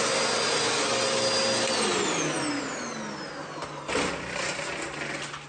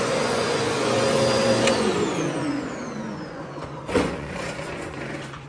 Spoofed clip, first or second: second